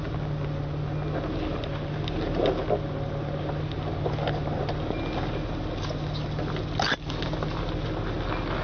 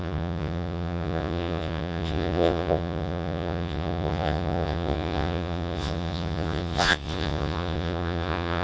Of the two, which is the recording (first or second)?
first